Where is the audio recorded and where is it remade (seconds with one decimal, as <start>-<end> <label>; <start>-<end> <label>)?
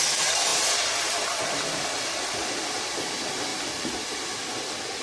0.0-3.5 recorded; 3.5-4.1 remade; 4.1-5.0 recorded